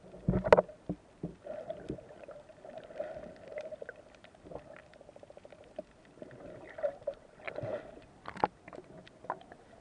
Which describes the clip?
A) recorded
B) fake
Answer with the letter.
A